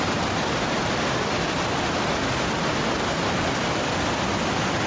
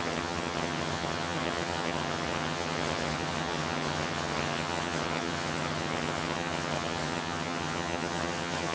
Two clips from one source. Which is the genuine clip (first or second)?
first